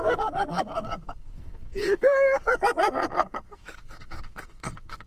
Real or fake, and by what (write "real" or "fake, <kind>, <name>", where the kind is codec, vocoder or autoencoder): fake, codec, SNAC